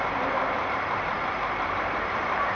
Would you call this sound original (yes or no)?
no